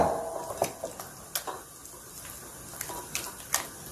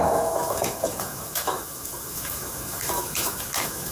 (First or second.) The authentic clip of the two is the first